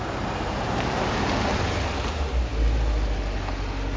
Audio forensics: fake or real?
real